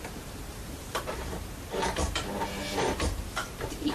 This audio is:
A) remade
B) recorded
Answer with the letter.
A